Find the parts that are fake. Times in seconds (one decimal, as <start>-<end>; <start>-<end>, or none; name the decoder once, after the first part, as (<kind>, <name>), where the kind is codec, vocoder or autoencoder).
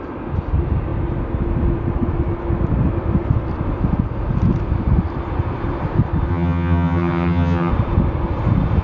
6.3-7.7 (vocoder, HiFi-GAN)